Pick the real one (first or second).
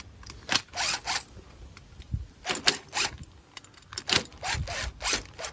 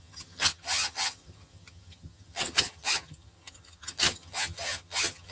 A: first